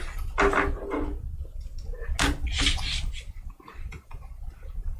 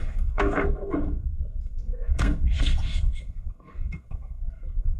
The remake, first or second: second